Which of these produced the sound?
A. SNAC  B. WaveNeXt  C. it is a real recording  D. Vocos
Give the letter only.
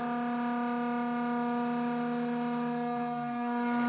C